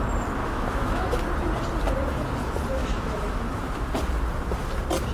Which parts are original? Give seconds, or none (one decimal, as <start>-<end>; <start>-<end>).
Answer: 0.0-0.4; 1.2-2.8; 3.7-5.1